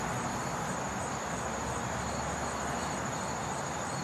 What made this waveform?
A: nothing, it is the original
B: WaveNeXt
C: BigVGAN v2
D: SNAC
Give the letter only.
A